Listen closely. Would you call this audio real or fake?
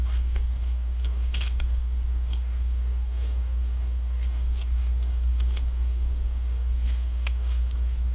fake